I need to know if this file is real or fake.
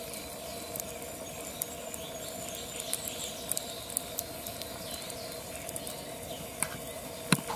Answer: real